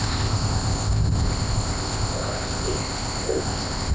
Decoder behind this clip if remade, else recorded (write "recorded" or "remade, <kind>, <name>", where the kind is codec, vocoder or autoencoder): remade, codec, ZipCodec